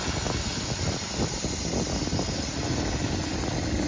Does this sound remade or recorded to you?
recorded